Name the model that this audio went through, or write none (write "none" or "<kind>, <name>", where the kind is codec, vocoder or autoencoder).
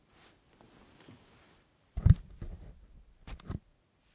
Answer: none